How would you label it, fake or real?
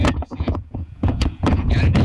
fake